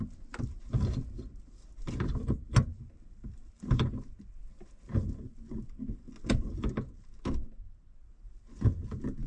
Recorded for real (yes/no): yes